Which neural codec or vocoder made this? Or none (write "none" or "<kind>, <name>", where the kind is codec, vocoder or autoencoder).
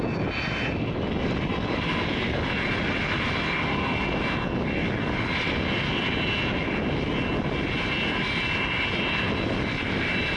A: none